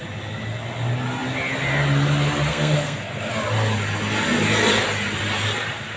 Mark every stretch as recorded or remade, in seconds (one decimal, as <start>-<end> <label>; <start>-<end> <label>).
0.0-2.5 recorded; 2.5-3.3 remade; 3.3-6.0 recorded